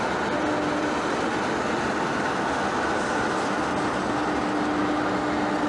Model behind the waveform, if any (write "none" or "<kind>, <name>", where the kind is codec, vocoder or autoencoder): none